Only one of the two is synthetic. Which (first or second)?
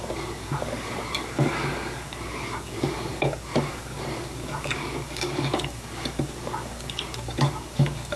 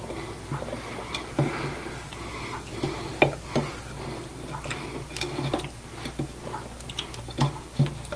first